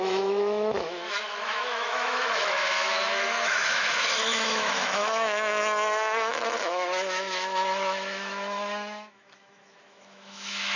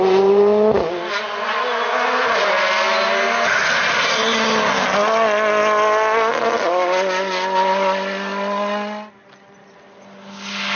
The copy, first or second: first